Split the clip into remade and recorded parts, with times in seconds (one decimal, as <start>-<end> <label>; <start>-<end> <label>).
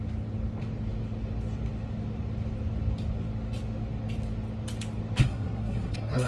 0.0-5.2 recorded; 5.2-6.3 remade